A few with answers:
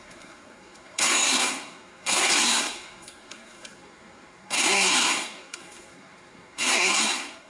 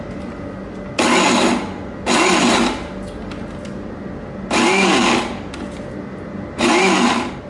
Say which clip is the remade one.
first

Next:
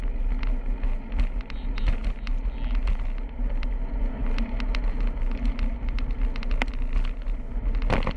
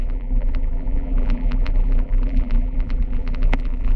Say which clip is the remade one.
second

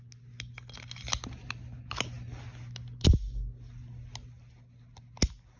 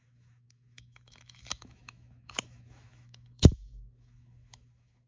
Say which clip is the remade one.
second